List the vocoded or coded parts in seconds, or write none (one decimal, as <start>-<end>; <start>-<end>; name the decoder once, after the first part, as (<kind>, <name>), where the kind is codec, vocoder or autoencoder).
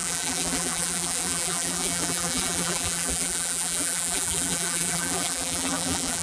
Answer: 0.0-6.2 (vocoder, BigVGAN v2)